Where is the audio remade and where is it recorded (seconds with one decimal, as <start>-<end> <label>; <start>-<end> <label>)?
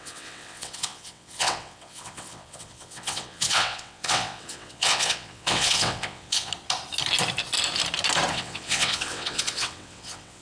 0.0-6.5 remade; 6.5-8.3 recorded; 8.3-10.4 remade